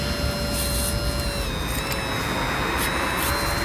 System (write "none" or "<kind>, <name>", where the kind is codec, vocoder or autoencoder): none